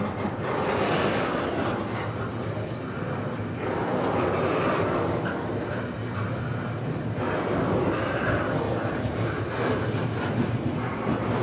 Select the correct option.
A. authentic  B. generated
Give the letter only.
A